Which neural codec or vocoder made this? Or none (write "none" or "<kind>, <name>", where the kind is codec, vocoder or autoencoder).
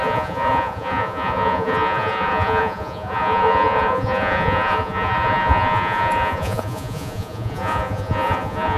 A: vocoder, Vocos